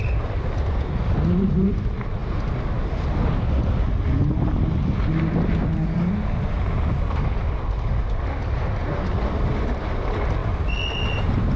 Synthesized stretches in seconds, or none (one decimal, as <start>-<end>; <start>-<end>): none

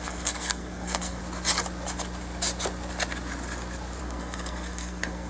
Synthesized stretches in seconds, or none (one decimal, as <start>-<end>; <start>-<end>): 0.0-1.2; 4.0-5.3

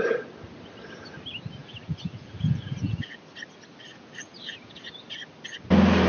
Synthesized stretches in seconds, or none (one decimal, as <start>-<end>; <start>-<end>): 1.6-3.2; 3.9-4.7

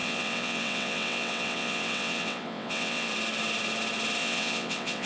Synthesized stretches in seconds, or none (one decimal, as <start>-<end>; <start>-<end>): 0.0-3.1; 4.2-5.1